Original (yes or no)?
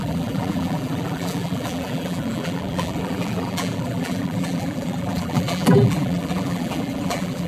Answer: no